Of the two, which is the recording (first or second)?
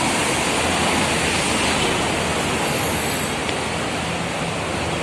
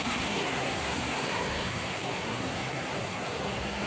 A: first